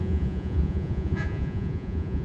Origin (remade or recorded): remade